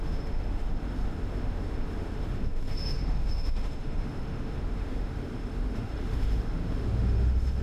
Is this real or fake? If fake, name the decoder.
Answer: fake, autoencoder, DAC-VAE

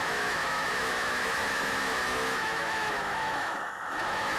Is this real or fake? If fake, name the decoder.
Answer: fake, autoencoder, DAC-VAE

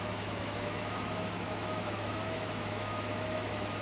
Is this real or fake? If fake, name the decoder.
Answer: fake, autoencoder, DAC-VAE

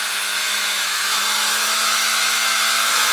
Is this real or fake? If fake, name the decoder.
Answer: fake, autoencoder, DAC-VAE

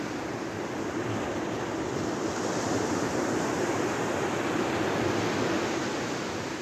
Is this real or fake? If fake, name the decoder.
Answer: real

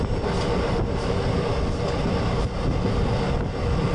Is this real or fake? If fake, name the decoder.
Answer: real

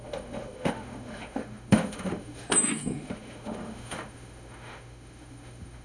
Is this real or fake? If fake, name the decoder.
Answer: fake, autoencoder, DAC-VAE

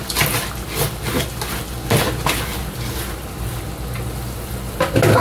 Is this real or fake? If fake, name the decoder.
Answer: real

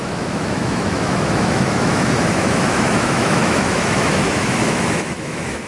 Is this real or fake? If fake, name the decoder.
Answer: fake, autoencoder, DAC-VAE